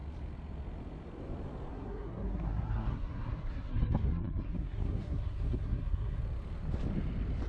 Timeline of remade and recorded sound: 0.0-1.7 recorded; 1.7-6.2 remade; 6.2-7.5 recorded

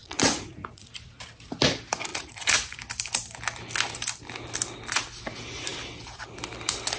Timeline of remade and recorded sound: 0.0-0.9 remade; 0.9-2.1 recorded; 2.1-2.8 remade; 2.8-7.0 recorded

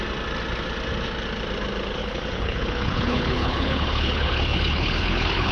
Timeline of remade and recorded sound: 0.0-2.0 recorded; 2.0-5.5 remade